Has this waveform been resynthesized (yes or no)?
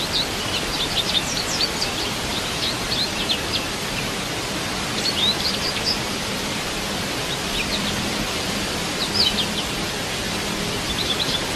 yes